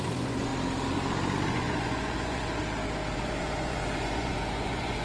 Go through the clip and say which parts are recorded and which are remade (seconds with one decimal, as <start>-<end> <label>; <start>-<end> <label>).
0.0-0.5 remade; 0.5-1.5 recorded; 1.5-2.6 remade; 2.6-3.1 recorded; 3.1-5.0 remade